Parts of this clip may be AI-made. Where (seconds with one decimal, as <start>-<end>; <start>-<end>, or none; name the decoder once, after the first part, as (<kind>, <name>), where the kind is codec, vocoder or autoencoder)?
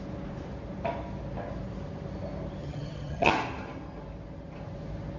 2.6-3.3 (vocoder, HiFi-GAN)